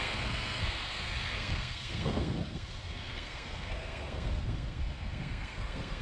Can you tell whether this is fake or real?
fake